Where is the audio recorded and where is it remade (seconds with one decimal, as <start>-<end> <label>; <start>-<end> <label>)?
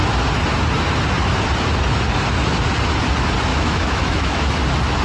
0.0-3.5 recorded; 3.5-4.5 remade; 4.5-5.0 recorded